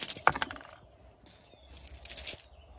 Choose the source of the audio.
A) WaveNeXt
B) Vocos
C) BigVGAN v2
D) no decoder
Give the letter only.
D